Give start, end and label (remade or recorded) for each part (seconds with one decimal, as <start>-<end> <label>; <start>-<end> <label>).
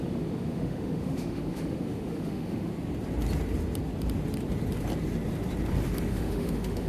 0.0-2.7 remade; 2.7-6.1 recorded; 6.1-6.9 remade